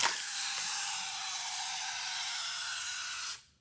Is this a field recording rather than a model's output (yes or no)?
yes